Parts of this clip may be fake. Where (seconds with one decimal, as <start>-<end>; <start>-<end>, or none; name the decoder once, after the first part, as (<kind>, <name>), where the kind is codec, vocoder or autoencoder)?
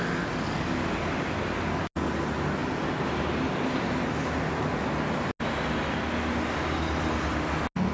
none